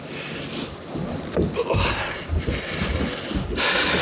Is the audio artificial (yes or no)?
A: no